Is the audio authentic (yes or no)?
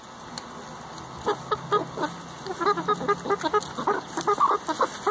yes